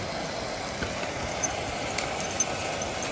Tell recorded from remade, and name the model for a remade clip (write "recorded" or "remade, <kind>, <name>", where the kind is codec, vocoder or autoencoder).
recorded